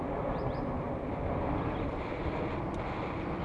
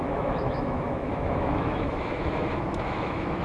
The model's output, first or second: second